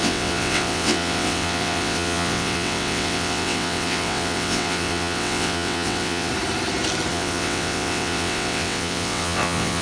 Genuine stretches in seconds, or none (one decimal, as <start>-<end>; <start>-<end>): 6.3-7.1

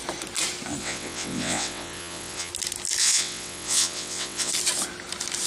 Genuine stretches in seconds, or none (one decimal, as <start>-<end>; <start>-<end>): 0.0-0.8; 2.5-3.0; 4.5-5.5

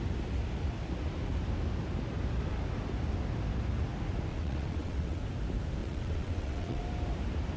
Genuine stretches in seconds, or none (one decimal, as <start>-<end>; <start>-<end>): 0.0-4.3; 5.2-5.8; 6.8-7.6